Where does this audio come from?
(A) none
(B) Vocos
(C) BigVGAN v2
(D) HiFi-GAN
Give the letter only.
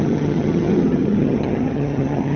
D